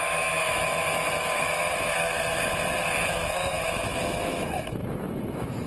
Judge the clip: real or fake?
fake